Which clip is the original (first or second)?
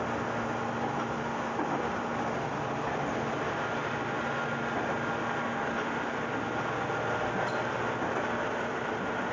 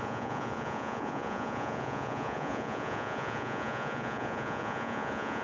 first